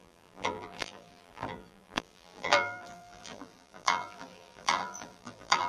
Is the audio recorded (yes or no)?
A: no